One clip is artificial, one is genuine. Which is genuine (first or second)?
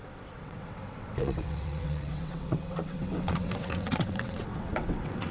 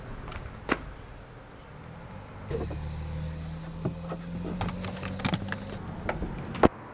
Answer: second